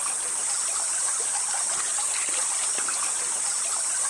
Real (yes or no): yes